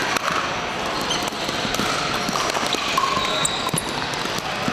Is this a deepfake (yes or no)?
no